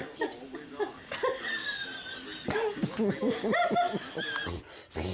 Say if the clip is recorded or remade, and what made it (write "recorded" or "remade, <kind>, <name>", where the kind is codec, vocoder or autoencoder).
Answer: recorded